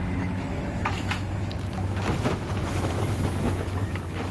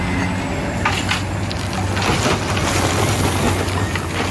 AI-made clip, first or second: first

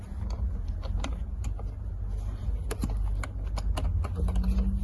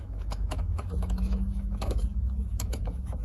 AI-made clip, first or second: second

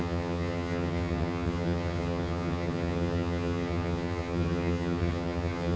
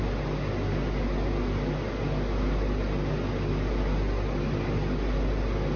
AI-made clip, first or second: first